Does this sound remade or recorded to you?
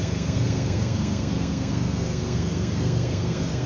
remade